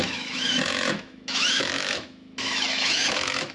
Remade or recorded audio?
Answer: remade